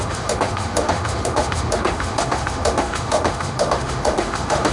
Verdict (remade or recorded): remade